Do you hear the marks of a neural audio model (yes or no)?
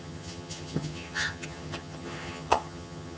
yes